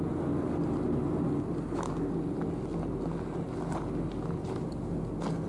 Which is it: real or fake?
real